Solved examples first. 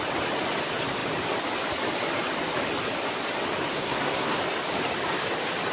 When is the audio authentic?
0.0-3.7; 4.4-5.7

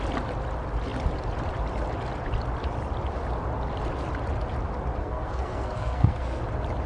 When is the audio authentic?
0.0-5.0; 6.4-6.9

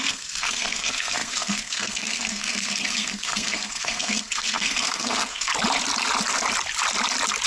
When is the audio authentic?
5.5-7.5